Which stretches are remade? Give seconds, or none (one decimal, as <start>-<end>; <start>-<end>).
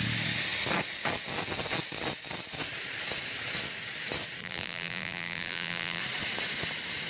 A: 4.4-6.0